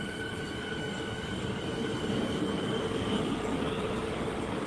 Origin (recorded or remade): remade